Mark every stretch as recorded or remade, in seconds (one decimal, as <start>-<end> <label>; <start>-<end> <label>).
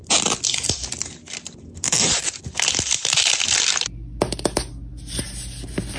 0.0-6.0 recorded